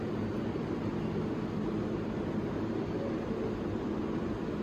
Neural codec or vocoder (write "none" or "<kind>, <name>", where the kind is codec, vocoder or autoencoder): none